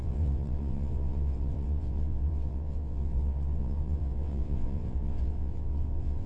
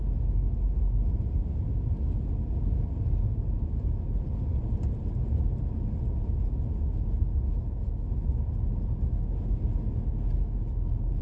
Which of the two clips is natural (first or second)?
second